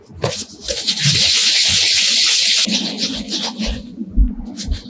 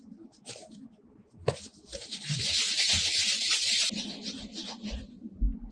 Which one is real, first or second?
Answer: second